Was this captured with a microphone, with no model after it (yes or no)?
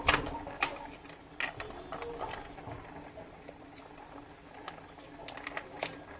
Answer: yes